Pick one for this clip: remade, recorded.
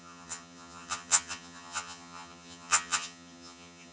remade